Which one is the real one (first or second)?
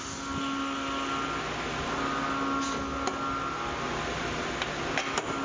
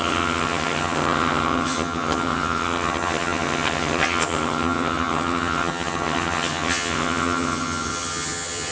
first